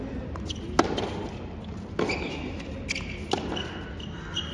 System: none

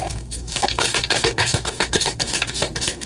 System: codec, DAC